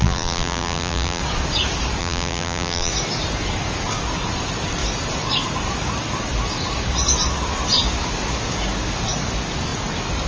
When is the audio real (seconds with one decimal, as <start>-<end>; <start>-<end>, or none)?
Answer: 1.2-2.0; 2.9-10.3